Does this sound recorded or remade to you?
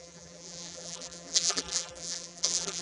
remade